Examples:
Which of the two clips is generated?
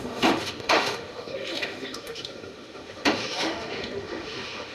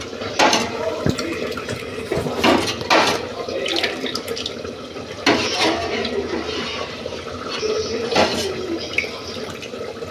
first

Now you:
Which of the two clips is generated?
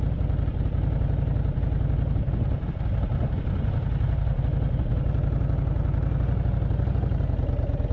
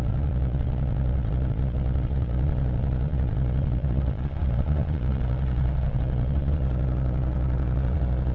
second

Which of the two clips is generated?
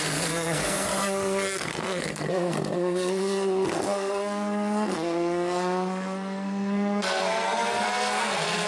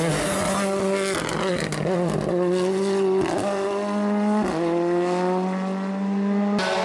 first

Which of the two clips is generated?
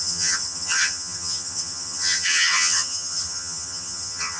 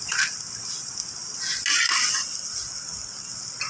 first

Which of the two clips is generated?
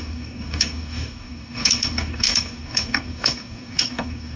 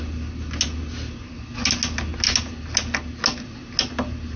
first